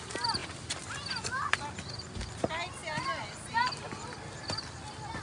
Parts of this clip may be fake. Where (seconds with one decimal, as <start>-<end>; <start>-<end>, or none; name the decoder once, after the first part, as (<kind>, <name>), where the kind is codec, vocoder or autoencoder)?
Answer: none